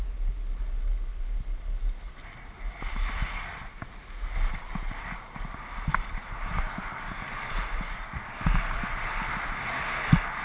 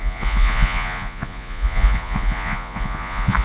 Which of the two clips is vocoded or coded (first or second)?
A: second